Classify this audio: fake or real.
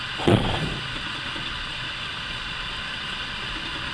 fake